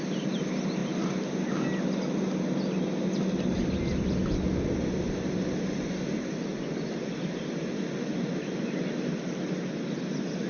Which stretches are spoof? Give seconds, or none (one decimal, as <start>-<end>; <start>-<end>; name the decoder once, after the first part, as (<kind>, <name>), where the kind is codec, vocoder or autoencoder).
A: none